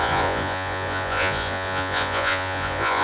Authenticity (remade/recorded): remade